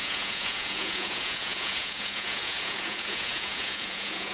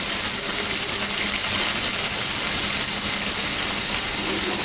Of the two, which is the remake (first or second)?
first